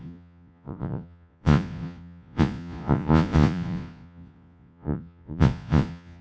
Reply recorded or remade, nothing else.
remade